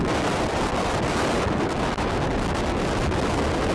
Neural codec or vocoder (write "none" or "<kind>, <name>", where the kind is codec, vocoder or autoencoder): none